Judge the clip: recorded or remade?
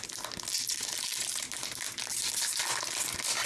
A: recorded